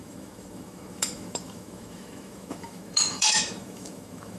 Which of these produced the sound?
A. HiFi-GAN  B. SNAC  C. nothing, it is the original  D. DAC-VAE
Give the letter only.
D